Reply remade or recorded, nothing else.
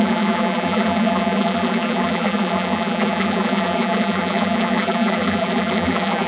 remade